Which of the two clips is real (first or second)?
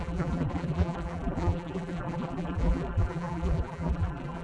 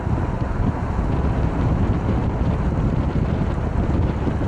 second